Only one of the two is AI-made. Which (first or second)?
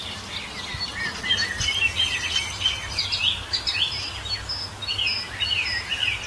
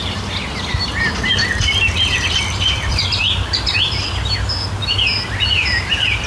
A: second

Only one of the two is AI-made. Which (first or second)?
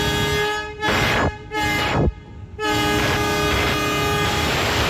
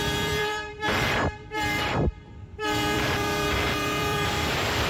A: second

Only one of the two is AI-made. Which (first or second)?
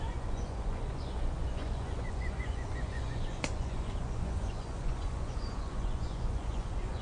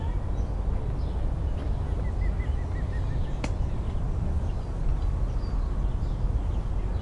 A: first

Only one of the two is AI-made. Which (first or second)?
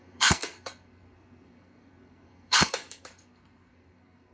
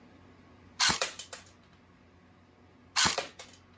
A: first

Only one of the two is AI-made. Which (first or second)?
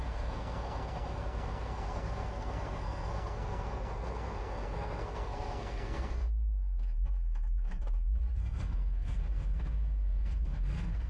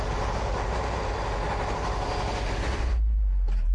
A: first